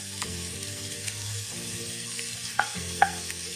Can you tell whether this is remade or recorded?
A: remade